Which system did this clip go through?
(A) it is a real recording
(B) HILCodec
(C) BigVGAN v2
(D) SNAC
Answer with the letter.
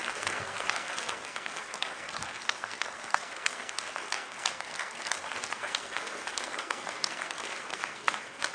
D